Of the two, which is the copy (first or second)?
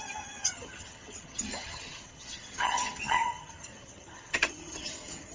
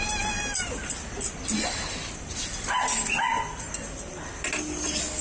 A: first